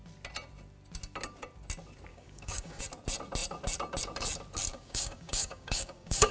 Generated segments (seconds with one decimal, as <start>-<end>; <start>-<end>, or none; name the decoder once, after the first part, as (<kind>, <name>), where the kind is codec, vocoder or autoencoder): 2.1-2.8 (codec, DAC); 4.7-6.3